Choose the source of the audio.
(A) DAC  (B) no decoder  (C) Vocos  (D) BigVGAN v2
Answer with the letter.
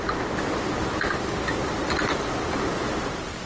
B